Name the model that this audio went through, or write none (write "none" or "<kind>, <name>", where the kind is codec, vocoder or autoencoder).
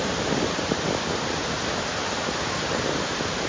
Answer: none